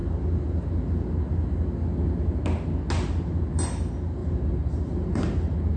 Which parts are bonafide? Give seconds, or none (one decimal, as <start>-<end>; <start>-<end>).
0.0-4.2

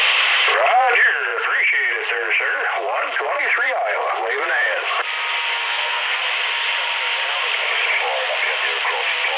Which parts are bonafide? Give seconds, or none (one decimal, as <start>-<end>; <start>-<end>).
0.0-5.6; 6.2-9.4

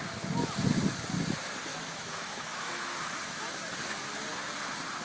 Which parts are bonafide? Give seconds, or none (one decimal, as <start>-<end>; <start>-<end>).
0.0-1.7; 3.0-5.0

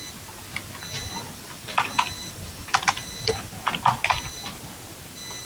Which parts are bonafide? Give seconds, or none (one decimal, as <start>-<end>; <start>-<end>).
0.0-1.0; 3.7-5.5

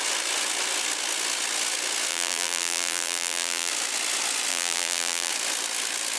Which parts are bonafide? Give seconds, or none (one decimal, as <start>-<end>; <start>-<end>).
0.0-2.1; 3.7-4.5; 5.3-6.2

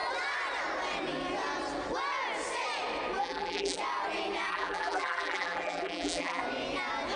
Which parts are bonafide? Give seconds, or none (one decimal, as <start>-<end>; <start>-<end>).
0.0-3.2; 3.8-4.5; 6.4-7.2

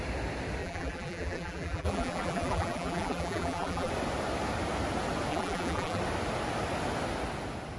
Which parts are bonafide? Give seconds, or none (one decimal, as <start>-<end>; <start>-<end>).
0.0-0.6; 3.9-5.3; 6.0-7.8

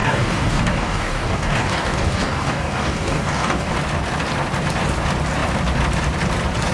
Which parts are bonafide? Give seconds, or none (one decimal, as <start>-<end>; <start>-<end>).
3.7-6.7